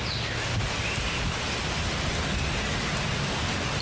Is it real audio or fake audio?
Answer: real